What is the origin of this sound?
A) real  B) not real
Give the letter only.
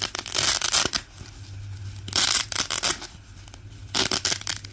A